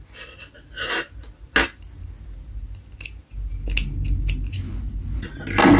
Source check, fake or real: real